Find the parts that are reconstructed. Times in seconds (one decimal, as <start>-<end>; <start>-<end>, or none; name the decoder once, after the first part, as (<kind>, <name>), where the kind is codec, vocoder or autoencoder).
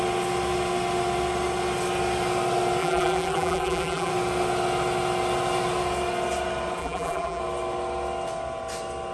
2.8-4.1 (vocoder, BigVGAN v2); 6.8-7.4